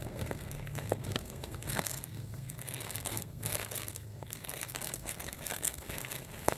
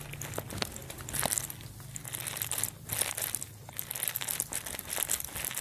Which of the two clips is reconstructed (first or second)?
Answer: first